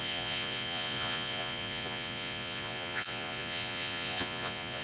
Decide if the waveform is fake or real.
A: fake